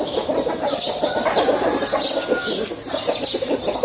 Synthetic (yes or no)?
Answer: no